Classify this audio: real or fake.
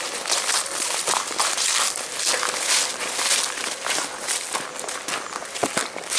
real